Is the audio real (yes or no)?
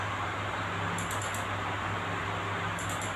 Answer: yes